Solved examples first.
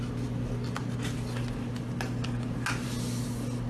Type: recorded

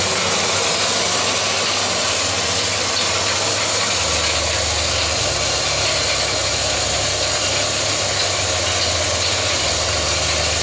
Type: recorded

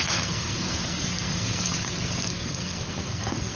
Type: remade